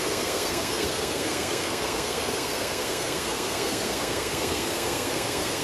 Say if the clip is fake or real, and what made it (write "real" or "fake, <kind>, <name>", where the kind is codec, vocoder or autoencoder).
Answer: fake, codec, SNAC